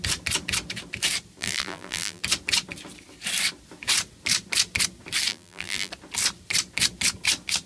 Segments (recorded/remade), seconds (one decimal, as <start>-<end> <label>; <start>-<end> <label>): 0.0-1.4 recorded; 1.4-2.2 remade; 2.2-5.3 recorded; 5.3-5.9 remade; 5.9-7.7 recorded

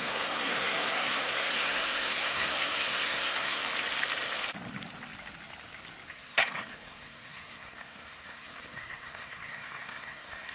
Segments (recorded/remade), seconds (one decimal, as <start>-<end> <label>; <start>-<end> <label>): 0.0-3.6 remade; 3.6-6.1 recorded; 6.1-10.5 remade

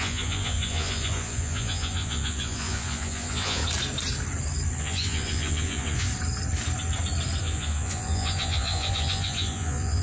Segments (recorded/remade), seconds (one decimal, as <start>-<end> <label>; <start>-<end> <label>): 0.0-3.6 remade; 3.6-4.8 recorded; 4.8-6.1 remade; 6.1-7.4 recorded; 7.4-10.0 remade

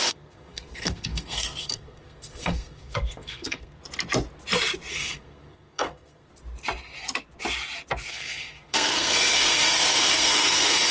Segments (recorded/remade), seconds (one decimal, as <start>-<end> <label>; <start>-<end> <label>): 0.0-3.8 remade; 3.8-4.9 recorded; 4.9-6.3 remade; 6.3-8.1 recorded; 8.1-10.9 remade

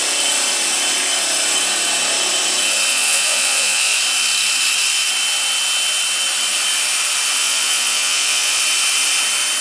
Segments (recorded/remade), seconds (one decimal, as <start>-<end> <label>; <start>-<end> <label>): 0.0-2.9 recorded; 2.9-4.0 remade; 4.0-7.4 recorded; 7.4-8.6 remade; 8.6-9.6 recorded

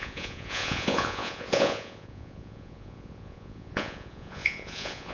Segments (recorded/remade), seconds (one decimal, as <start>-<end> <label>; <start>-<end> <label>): 0.0-5.1 remade